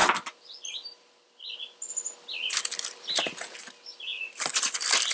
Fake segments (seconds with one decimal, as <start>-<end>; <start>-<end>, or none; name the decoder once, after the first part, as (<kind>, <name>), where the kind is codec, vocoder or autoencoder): 4.1-5.1 (vocoder, BigVGAN v2)